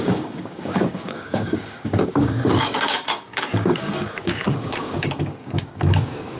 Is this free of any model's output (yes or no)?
no